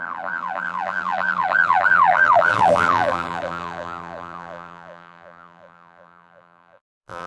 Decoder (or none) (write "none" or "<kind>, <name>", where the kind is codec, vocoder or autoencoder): vocoder, BigVGAN v2